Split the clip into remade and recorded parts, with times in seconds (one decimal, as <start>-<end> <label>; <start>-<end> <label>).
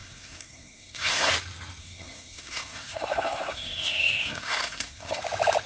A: 0.0-1.3 remade; 1.3-1.8 recorded; 1.8-5.2 remade; 5.2-5.7 recorded